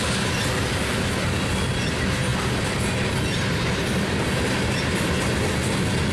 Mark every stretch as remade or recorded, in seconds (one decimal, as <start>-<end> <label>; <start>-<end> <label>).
0.0-6.1 recorded